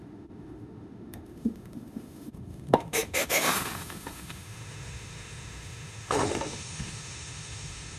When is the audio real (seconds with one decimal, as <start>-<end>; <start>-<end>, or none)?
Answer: none